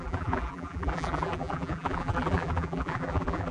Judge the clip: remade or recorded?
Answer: remade